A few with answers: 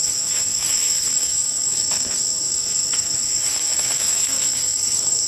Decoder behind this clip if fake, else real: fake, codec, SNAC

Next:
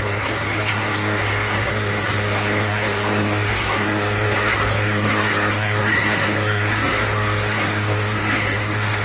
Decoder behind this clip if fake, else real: fake, codec, SNAC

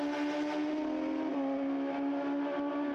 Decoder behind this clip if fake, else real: real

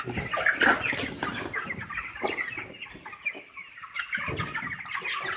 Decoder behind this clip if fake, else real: real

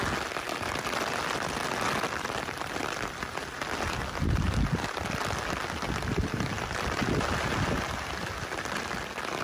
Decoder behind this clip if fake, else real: real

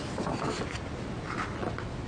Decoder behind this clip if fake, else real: real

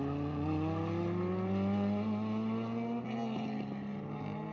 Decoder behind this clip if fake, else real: real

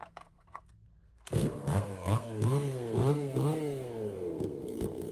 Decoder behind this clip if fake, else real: fake, codec, SNAC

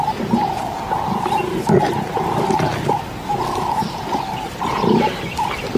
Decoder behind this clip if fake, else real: real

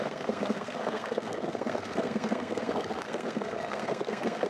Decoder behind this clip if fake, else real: fake, codec, SNAC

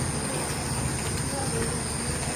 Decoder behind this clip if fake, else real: real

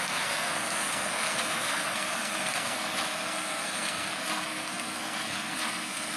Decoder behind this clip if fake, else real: fake, codec, SNAC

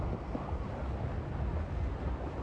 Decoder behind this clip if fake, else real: real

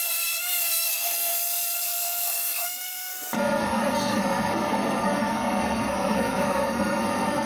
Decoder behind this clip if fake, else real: fake, codec, SNAC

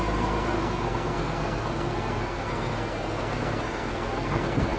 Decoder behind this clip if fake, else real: fake, codec, SNAC